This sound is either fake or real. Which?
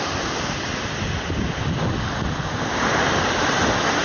real